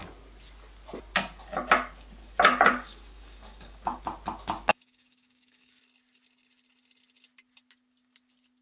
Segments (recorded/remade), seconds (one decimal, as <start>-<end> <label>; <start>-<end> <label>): 0.0-2.2 recorded; 2.2-4.0 remade; 4.0-4.7 recorded; 4.7-5.8 remade; 5.8-8.6 recorded